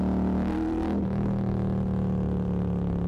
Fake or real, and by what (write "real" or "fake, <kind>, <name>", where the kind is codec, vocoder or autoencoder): real